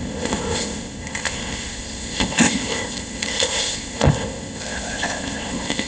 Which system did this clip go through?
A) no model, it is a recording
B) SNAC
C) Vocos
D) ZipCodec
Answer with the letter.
D